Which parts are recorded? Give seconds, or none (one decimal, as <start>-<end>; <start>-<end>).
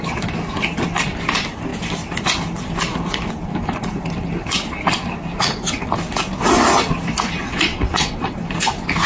0.0-7.4; 8.4-9.1